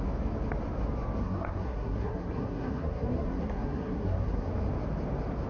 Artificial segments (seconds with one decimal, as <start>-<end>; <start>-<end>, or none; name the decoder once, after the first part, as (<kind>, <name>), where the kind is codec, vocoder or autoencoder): 1.2-4.5 (codec, SNAC)